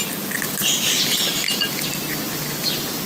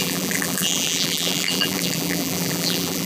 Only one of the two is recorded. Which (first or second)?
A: first